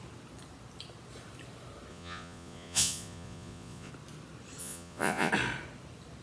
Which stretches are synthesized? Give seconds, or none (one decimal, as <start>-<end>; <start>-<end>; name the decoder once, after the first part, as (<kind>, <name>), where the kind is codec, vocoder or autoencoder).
1.9-3.9 (vocoder, Vocos); 4.6-5.3